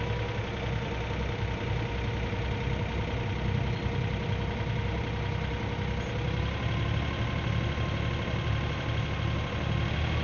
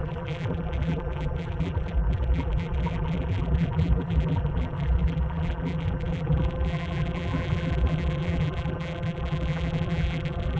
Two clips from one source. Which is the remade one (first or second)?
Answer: second